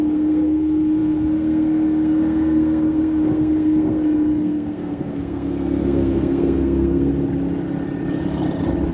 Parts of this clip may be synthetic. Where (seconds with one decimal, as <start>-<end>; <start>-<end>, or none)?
0.0-7.1

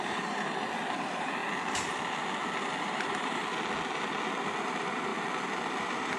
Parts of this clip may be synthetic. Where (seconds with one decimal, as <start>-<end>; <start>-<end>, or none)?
0.0-1.4; 2.8-3.4; 4.6-5.1; 5.8-6.2

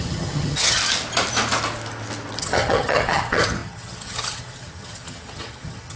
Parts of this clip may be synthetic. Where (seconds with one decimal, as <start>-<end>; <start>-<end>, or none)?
0.0-0.8; 2.4-6.0

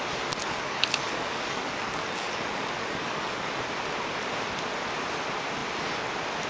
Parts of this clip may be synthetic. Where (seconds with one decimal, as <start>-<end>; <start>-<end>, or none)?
0.4-3.5

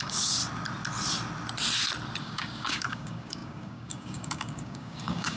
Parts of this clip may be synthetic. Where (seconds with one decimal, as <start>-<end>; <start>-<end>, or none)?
0.0-0.4; 2.2-5.4